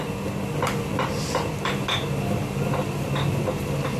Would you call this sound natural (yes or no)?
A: yes